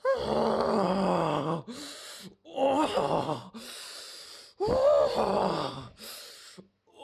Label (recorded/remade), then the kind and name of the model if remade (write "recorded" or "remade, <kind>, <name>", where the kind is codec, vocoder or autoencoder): recorded